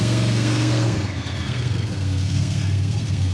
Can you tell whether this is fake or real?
fake